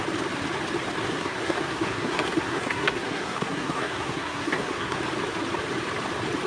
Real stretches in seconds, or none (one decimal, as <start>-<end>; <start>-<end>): 0.0-1.1; 5.0-6.5